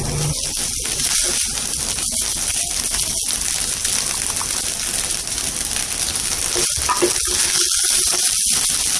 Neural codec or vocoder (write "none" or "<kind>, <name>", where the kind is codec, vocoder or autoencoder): none